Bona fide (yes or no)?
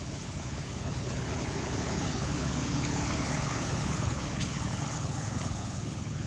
no